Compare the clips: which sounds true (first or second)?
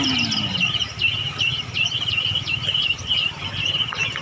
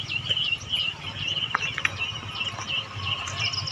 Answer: second